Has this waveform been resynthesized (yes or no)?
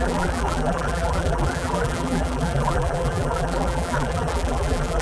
yes